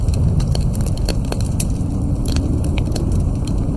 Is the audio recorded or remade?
recorded